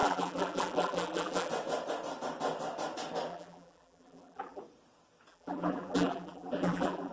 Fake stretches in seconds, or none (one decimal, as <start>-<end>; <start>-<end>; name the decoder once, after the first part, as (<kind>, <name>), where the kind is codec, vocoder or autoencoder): 0.0-1.5 (vocoder, BigVGAN v2); 3.3-4.6; 5.3-7.1